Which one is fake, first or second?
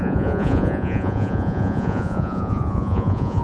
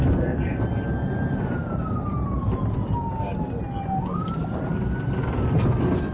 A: first